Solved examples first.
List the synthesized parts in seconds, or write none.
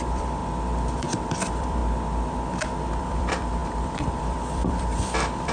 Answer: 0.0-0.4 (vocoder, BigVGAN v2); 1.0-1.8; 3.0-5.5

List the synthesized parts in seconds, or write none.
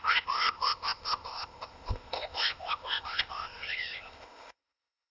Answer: 0.0-5.1 (codec, ZipCodec)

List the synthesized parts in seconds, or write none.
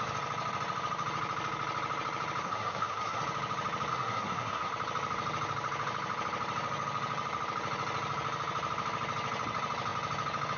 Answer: 2.4-3.2 (codec, SNAC); 3.9-4.7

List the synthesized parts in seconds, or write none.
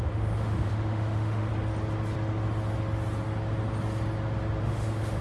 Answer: 0.0-1.5 (autoencoder, DAC-VAE); 4.6-5.2